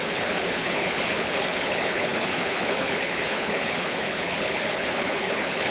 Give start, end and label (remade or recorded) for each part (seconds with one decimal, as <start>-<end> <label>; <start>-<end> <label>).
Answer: 0.0-5.7 remade